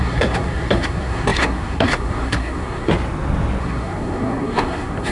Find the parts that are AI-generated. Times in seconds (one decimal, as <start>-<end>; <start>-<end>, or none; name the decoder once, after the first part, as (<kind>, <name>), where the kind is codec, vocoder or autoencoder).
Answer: 0.0-2.9 (codec, SNAC); 3.6-5.1